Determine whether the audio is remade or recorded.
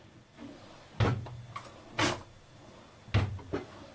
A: recorded